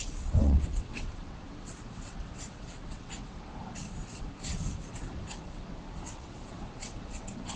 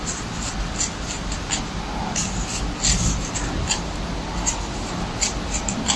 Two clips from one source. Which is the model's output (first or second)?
first